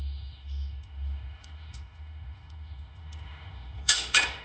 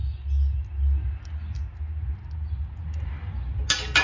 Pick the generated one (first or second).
first